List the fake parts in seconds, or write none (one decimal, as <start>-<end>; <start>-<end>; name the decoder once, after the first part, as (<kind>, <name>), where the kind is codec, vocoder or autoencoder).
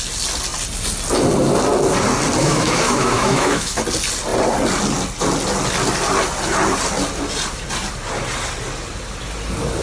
2.4-3.8 (autoencoder, DAC-VAE)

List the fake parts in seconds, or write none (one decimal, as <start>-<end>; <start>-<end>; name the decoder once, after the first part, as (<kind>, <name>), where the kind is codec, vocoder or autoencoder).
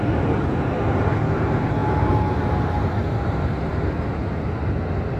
none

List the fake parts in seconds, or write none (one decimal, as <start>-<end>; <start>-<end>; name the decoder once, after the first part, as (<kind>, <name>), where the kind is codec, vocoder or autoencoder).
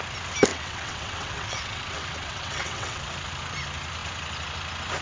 0.5-3.0 (vocoder, WaveNeXt)